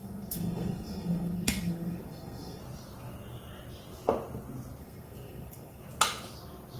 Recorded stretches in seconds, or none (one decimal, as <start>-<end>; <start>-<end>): 2.6-4.8; 5.8-6.8